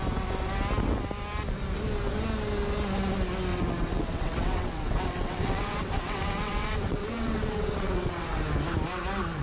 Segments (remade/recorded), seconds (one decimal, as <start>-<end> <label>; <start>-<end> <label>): 0.0-3.5 recorded; 3.5-8.4 remade; 8.4-9.4 recorded